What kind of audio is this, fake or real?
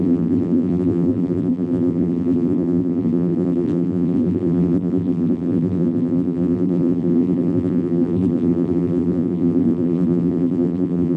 fake